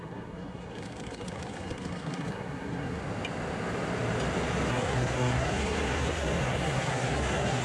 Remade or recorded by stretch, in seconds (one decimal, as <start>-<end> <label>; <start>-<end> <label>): 0.0-3.0 remade; 3.0-4.7 recorded; 4.7-7.6 remade